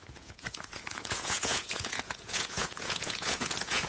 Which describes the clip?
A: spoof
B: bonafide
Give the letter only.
A